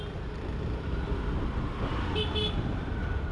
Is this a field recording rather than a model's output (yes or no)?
yes